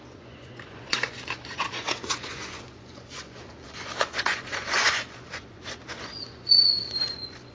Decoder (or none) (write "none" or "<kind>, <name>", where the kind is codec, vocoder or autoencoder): vocoder, Vocos